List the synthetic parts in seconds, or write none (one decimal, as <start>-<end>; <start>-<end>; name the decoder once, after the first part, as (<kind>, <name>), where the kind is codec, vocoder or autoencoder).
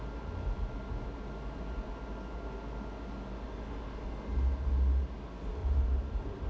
5.6-6.5 (vocoder, BigVGAN v2)